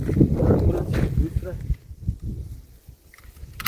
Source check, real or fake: fake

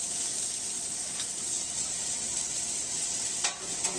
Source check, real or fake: real